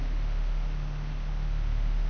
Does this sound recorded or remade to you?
remade